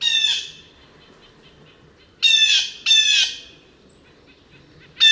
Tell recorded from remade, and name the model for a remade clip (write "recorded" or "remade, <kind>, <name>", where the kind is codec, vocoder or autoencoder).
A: recorded